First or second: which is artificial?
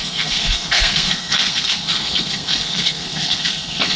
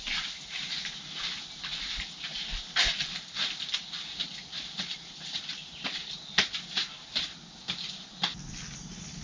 first